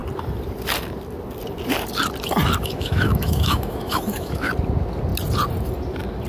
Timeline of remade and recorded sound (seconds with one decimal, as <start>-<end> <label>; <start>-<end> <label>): 0.0-2.6 recorded; 2.6-4.5 remade; 4.5-6.3 recorded

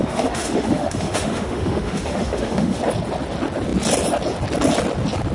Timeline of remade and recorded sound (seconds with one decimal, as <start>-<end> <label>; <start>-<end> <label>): 0.0-2.8 remade; 2.8-5.3 recorded